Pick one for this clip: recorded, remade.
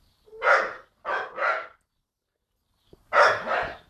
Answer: recorded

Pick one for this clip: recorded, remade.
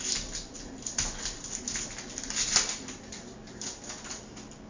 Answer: recorded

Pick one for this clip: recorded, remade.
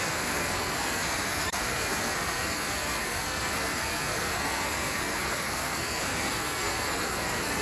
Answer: remade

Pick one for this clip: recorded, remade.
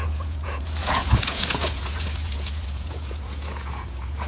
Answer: remade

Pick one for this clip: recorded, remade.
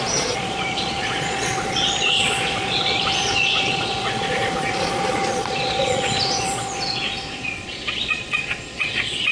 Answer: remade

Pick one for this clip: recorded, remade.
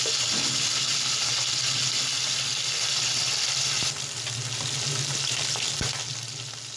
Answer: recorded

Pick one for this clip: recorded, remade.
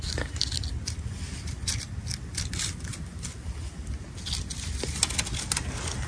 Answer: recorded